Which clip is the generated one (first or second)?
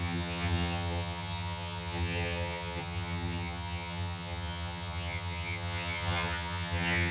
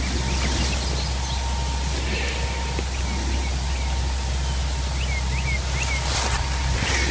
first